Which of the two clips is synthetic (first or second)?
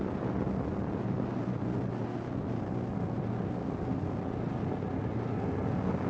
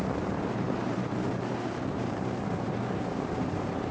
second